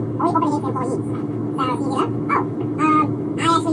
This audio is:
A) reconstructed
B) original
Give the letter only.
A